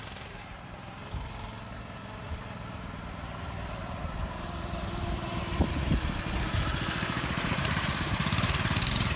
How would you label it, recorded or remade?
remade